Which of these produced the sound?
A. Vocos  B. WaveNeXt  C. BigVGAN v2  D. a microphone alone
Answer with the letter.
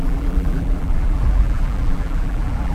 C